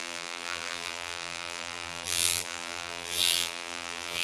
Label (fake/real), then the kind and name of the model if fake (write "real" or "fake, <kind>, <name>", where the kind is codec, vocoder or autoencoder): fake, vocoder, BigVGAN v2